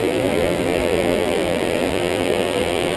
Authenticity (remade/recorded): remade